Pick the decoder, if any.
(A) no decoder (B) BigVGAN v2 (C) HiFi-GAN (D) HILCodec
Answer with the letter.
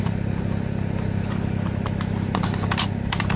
A